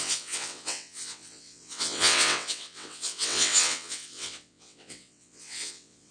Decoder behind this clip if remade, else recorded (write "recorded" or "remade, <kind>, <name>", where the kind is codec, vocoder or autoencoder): remade, vocoder, WaveNeXt